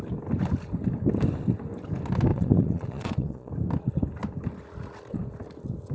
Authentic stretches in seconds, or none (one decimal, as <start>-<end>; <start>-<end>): 0.0-2.3; 3.5-5.9